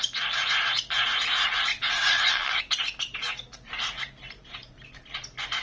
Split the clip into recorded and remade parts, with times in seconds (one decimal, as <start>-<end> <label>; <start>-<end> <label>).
0.0-1.7 recorded; 1.7-2.6 remade; 2.6-5.6 recorded